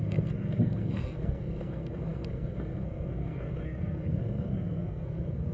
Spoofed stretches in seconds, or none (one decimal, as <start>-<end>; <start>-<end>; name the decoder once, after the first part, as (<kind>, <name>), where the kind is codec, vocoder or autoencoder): 0.0-5.5 (codec, SNAC)

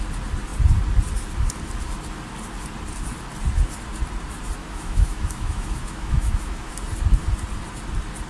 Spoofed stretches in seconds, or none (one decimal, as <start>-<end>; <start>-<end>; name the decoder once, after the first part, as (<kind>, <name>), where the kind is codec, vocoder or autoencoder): 4.6-6.7 (autoencoder, DAC-VAE)

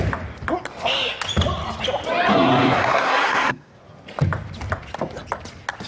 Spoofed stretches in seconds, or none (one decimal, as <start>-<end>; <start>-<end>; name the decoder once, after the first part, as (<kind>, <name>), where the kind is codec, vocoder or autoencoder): 2.3-3.8 (codec, SNAC)